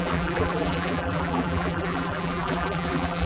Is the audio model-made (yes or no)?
yes